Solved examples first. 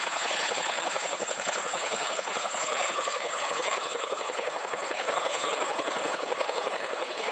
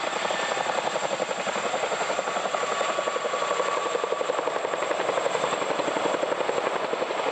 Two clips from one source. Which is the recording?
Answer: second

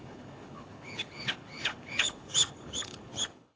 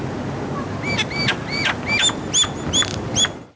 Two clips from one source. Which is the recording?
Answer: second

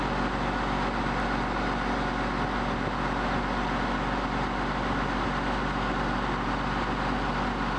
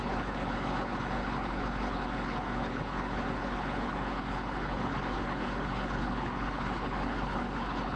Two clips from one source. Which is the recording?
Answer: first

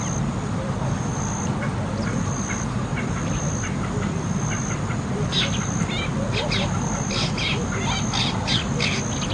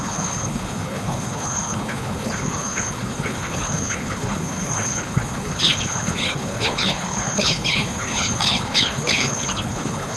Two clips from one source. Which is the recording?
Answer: first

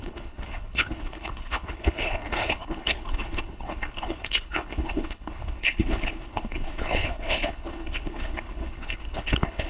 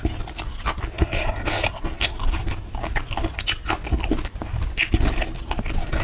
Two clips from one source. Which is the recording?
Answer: second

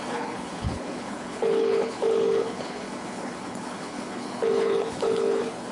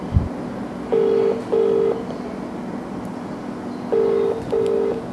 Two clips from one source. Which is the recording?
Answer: second